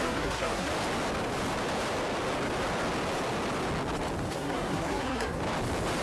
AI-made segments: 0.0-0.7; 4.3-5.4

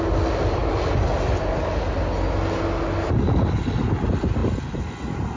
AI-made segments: none

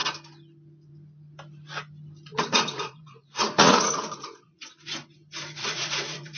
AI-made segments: 2.3-4.7; 5.6-6.4

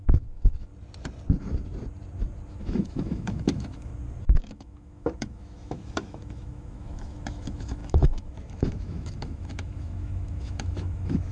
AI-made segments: 0.0-0.7; 2.5-3.9; 4.4-11.3

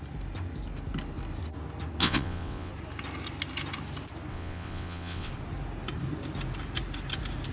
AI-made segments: 2.0-2.7; 4.3-5.3

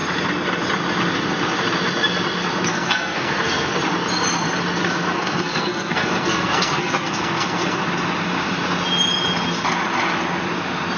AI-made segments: 2.7-3.7; 4.8-7.8

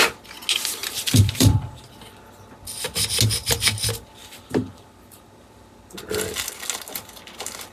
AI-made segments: 0.8-1.8; 4.2-6.0

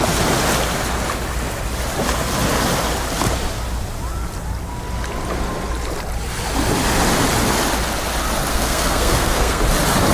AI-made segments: 8.5-9.6